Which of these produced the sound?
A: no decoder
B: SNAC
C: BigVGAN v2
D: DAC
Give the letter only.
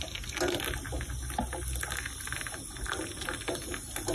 A